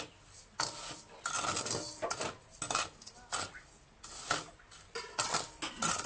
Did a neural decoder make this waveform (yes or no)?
no